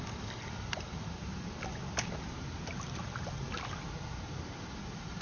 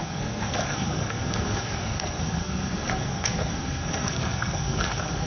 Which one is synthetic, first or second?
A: second